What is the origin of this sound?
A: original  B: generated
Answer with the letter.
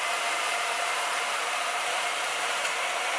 B